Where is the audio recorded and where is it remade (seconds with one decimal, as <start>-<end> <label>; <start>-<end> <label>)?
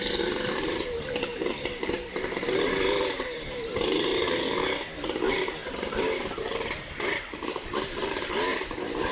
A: 0.0-9.1 remade